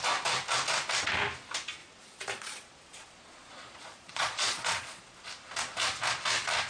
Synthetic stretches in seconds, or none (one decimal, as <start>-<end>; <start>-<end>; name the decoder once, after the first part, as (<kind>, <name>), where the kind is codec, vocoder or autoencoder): 1.8-5.0 (vocoder, Vocos)